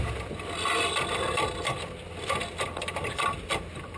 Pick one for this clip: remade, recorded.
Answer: recorded